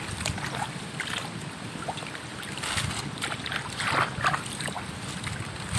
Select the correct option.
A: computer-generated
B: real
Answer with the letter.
B